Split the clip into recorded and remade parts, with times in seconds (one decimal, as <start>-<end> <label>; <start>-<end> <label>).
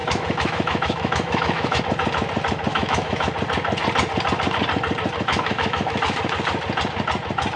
0.0-1.8 remade; 1.8-2.7 recorded; 2.7-3.3 remade; 3.3-5.3 recorded; 5.3-6.0 remade; 6.0-7.6 recorded